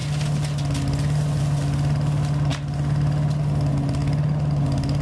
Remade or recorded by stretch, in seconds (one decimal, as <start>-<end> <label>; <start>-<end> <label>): 0.0-5.0 recorded